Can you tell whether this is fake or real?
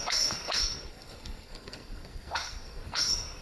fake